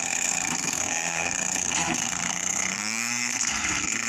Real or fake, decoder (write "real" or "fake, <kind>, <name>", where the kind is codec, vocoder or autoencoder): fake, codec, SNAC